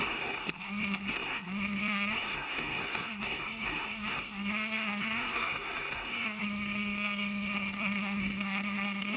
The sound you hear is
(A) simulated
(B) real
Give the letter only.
A